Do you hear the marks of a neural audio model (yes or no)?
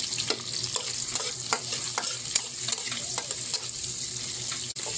no